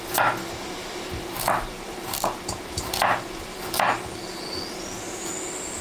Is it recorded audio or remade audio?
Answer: recorded